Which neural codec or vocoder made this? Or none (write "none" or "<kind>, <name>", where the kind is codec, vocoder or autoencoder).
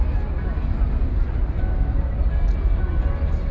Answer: none